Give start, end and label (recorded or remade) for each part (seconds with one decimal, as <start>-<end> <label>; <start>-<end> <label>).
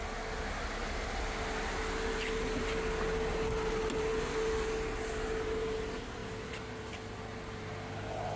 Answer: 0.0-8.4 recorded